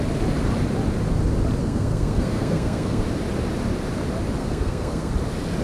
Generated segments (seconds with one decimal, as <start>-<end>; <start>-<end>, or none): 1.6-3.0; 4.4-5.1